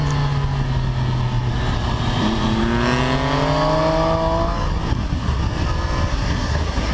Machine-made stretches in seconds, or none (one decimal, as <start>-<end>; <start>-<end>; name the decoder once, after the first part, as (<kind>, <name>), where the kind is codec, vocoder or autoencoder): 4.9-5.4 (codec, SNAC); 6.1-6.9